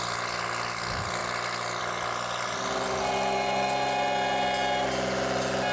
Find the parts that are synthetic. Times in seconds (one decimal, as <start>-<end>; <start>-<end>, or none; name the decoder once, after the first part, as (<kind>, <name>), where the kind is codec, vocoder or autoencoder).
none